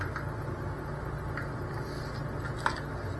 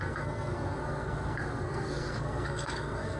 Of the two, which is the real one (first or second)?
first